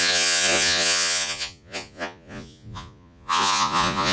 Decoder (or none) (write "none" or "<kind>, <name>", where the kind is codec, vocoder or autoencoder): vocoder, Vocos